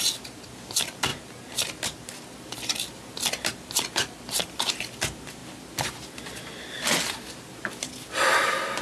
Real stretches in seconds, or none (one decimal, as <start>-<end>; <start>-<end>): 0.0-8.8